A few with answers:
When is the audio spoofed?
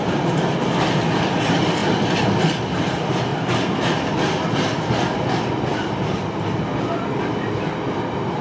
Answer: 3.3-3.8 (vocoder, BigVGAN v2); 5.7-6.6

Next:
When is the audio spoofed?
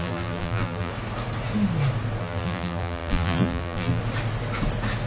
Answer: 0.0-0.9 (vocoder, BigVGAN v2); 2.2-4.0